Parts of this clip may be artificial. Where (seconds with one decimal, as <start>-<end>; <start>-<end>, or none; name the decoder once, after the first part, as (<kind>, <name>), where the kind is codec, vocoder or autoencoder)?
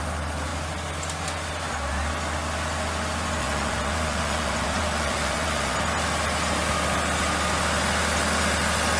3.4-5.8 (vocoder, Vocos)